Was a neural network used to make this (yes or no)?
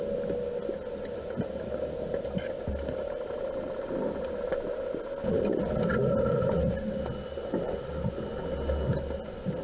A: no